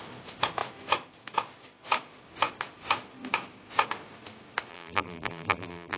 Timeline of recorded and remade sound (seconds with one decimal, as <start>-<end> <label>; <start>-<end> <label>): 0.0-4.7 recorded; 4.7-6.0 remade